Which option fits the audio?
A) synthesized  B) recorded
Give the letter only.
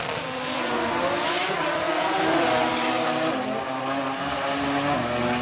B